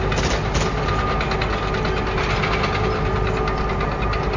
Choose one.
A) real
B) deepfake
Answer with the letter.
A